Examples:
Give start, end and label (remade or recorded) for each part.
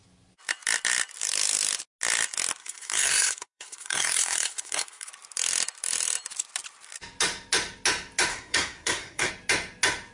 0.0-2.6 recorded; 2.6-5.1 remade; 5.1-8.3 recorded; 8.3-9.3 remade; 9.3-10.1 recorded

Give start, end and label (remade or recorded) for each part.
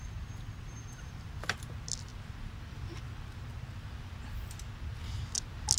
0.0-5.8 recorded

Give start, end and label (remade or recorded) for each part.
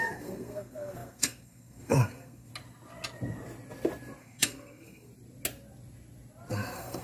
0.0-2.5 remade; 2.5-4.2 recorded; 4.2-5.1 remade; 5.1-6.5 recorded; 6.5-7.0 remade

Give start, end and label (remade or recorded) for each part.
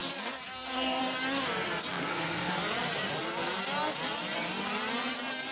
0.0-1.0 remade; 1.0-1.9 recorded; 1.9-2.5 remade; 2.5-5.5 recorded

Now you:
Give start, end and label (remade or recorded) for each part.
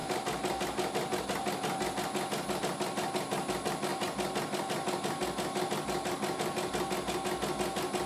0.0-8.1 recorded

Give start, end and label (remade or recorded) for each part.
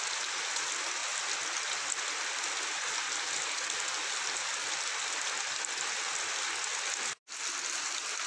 0.0-8.3 recorded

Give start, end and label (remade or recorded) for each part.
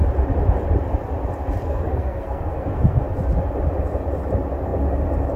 0.0-1.6 recorded; 1.6-3.0 remade; 3.0-5.4 recorded